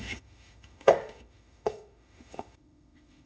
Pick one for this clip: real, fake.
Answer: fake